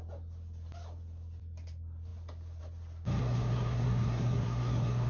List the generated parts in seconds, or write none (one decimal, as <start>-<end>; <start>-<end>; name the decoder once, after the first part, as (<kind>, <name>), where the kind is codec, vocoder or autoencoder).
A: 3.2-5.1 (codec, SNAC)